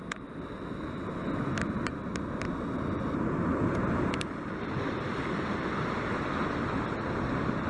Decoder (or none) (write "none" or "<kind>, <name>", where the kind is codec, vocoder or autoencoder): vocoder, BigVGAN v2